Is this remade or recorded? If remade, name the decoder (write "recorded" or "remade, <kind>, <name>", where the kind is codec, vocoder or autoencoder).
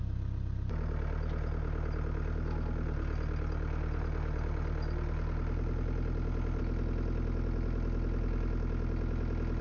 recorded